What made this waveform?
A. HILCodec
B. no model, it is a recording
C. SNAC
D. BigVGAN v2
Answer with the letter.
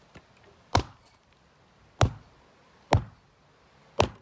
B